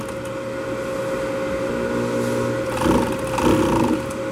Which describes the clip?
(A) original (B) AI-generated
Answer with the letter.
A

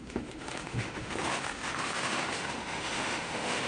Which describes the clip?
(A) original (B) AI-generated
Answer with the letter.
B